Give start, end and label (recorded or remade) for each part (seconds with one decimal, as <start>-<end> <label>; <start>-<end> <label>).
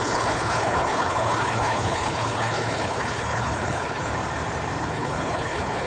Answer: 0.0-4.1 remade; 4.1-4.8 recorded; 4.8-5.9 remade